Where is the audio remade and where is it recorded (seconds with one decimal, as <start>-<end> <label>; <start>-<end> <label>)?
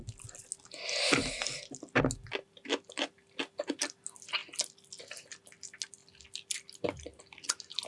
0.0-7.9 recorded